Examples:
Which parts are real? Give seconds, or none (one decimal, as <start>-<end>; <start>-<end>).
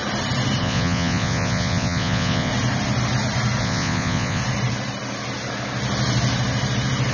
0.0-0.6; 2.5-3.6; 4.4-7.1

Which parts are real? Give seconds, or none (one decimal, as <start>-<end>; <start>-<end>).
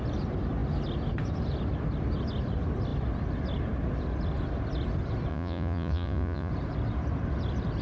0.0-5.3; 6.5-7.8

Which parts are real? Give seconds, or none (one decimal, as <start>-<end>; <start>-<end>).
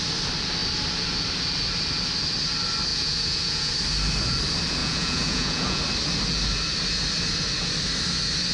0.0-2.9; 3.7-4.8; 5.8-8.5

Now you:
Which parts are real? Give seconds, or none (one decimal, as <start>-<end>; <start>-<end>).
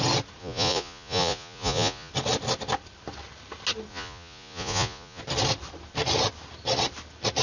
0.0-0.4; 2.1-3.9; 5.2-7.4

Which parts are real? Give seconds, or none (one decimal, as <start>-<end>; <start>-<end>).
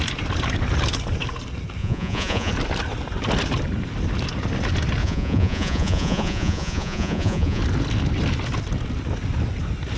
0.0-1.8; 2.5-5.0; 7.6-10.0